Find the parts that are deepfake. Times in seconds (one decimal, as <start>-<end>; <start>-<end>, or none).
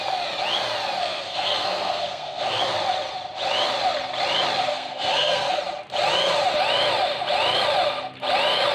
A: 1.0-2.6; 4.7-5.6